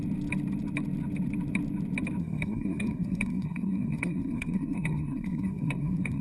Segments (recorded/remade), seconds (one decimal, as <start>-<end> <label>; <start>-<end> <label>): 0.0-2.2 recorded; 2.2-6.2 remade